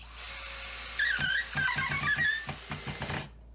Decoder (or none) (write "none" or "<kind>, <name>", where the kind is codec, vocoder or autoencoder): none